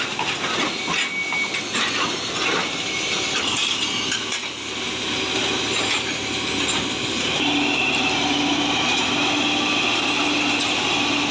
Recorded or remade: recorded